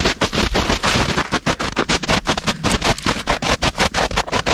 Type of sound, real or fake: real